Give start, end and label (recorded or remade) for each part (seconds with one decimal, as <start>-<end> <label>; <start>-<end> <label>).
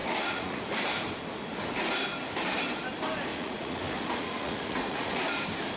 0.0-0.6 remade; 0.6-3.3 recorded; 3.3-5.2 remade; 5.2-5.8 recorded